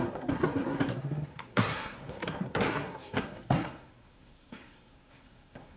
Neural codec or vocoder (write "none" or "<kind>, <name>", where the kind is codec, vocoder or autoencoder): codec, SNAC